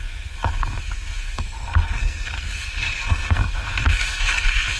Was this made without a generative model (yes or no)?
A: no